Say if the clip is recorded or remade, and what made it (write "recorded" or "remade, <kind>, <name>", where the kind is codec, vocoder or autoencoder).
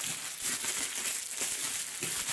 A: remade, vocoder, BigVGAN v2